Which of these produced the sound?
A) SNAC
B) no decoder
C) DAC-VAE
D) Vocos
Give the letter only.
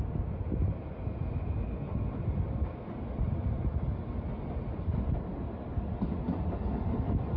B